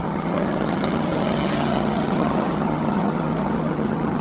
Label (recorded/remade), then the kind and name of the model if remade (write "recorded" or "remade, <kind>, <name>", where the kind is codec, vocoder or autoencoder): remade, vocoder, HiFi-GAN